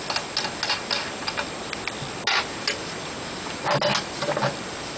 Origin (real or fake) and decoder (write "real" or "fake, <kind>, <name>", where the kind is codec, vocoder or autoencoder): real